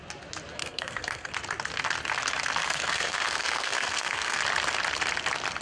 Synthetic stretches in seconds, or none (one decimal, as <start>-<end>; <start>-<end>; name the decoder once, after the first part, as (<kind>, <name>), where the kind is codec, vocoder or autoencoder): 0.6-1.3 (codec, SNAC); 2.6-4.4